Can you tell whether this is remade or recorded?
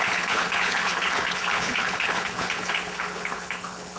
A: remade